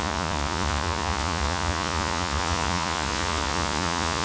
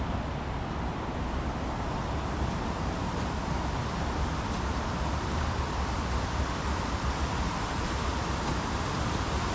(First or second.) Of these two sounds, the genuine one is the second